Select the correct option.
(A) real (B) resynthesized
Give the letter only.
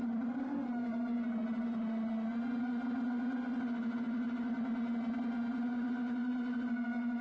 A